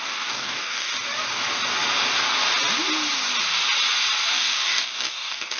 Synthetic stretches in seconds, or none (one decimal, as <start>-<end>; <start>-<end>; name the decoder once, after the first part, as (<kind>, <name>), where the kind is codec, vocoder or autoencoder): 0.0-0.9 (codec, DAC); 4.3-5.6